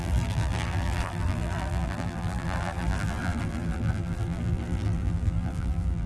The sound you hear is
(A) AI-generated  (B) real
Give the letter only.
A